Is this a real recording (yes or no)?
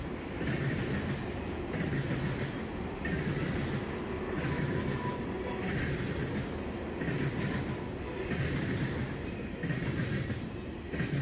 yes